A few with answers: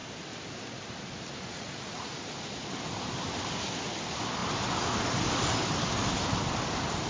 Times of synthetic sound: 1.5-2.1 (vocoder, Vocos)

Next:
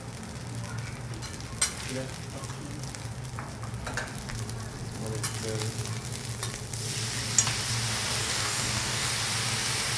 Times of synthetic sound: 8.2-9.1 (codec, DAC)